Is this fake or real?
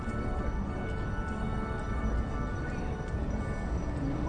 real